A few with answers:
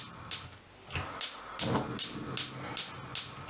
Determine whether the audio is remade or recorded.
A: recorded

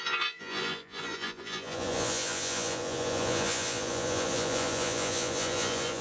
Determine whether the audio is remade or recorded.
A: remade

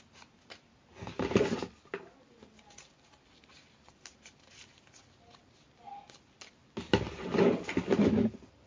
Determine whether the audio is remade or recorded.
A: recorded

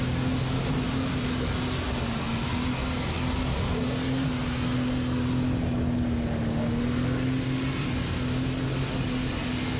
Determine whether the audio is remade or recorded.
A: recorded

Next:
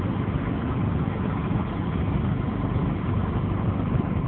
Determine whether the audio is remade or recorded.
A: recorded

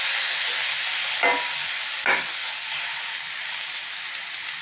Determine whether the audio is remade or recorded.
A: recorded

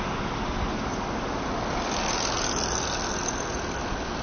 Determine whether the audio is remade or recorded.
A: recorded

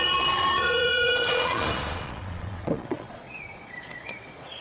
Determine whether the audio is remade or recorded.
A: remade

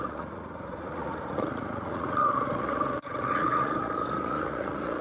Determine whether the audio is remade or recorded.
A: remade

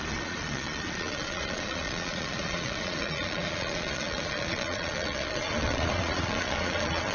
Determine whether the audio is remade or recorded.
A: remade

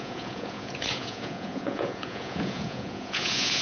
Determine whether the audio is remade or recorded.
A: remade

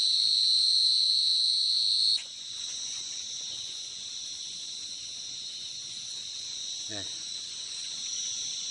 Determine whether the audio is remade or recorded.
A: remade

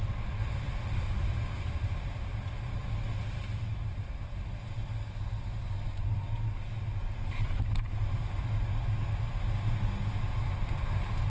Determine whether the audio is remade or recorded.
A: recorded